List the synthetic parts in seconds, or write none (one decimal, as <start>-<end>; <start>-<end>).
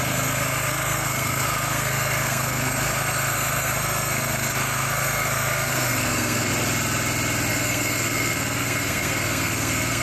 0.0-6.5; 7.5-10.0